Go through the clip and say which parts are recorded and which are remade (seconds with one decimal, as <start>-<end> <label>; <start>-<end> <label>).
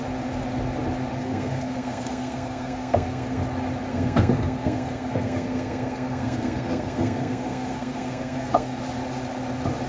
0.0-1.2 recorded; 1.2-3.4 remade; 3.4-3.9 recorded; 3.9-8.8 remade; 8.8-9.9 recorded